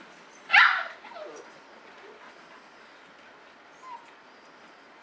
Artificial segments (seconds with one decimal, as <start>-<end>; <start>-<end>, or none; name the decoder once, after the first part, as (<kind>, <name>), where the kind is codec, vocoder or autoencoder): none